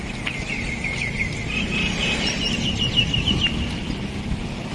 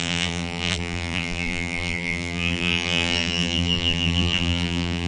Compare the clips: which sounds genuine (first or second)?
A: first